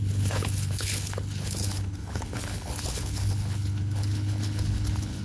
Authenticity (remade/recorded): remade